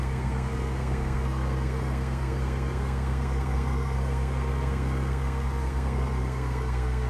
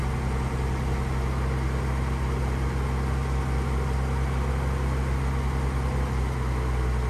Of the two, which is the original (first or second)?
second